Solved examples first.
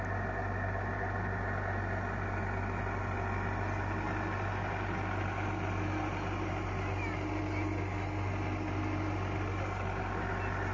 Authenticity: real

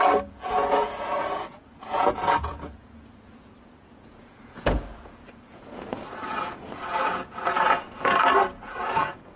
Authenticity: fake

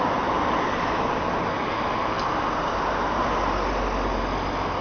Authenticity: real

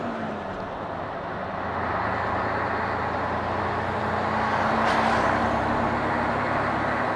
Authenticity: real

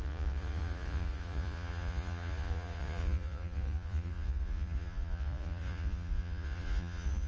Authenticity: fake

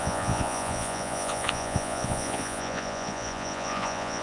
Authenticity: fake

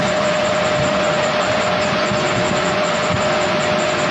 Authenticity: fake